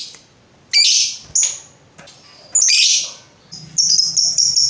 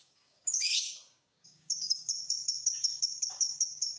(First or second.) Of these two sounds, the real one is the first